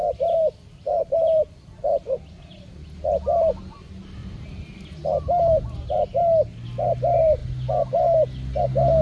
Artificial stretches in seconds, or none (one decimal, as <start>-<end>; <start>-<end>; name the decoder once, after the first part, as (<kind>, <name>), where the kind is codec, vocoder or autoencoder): 1.0-2.4 (vocoder, BigVGAN v2); 4.2-4.7